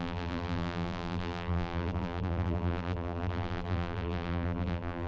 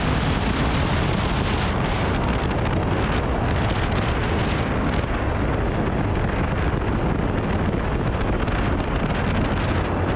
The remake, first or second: first